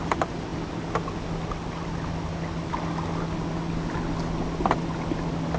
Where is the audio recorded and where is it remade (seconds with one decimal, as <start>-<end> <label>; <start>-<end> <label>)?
0.0-5.6 recorded